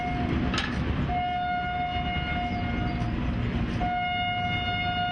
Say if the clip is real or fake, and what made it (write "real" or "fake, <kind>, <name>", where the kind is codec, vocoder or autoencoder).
real